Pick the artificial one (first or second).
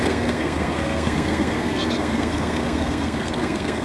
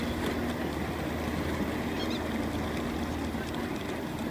first